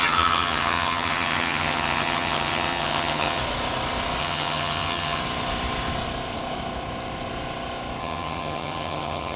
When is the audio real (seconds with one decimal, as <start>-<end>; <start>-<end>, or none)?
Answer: 3.4-4.2; 5.2-8.0